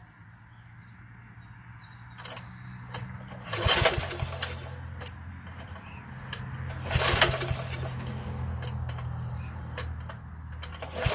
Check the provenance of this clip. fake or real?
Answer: real